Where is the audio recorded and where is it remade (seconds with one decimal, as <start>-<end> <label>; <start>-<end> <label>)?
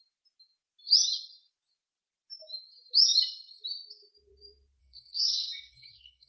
0.0-4.8 recorded; 4.8-6.3 remade